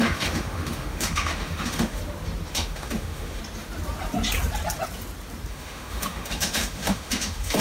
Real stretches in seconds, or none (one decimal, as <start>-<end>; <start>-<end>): 2.0-2.5; 3.4-5.5